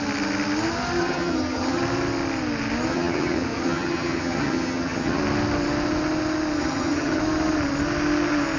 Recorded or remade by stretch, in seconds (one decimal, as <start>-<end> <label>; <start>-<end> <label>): 0.0-1.0 recorded; 1.0-1.8 remade; 1.8-2.9 recorded; 2.9-5.2 remade; 5.2-6.6 recorded; 6.6-7.2 remade; 7.2-8.6 recorded